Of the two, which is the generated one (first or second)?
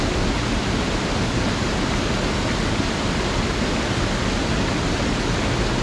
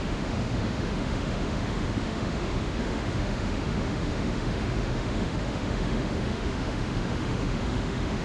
second